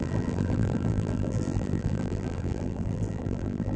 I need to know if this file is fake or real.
fake